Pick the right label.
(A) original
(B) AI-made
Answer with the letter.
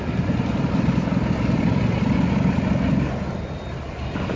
A